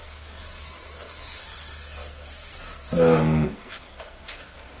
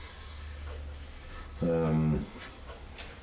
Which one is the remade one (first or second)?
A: first